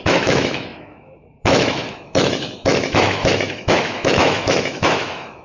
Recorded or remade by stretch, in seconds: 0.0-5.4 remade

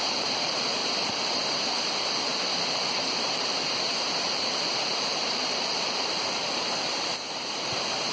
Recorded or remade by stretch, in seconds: 0.0-0.8 remade; 0.8-1.3 recorded; 1.3-8.1 remade

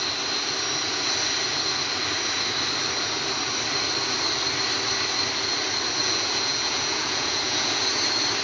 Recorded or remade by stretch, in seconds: 0.0-6.0 recorded; 6.0-7.8 remade; 7.8-8.4 recorded

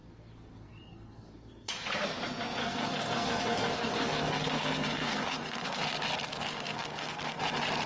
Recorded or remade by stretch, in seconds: 0.0-1.7 remade; 1.7-2.6 recorded; 2.6-5.8 remade; 5.8-6.3 recorded; 6.3-7.4 remade; 7.4-7.9 recorded

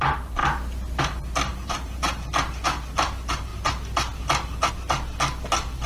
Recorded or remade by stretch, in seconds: 0.0-1.5 recorded; 1.5-2.2 remade; 2.2-5.9 recorded

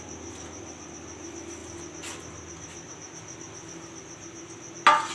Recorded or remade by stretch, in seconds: 0.0-5.1 recorded